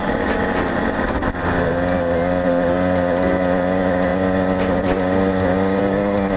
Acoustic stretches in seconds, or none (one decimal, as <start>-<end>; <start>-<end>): 0.0-6.4